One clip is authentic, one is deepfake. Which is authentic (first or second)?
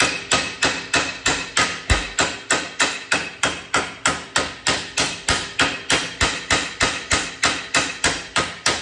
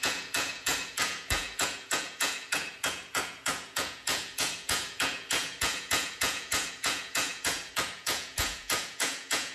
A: first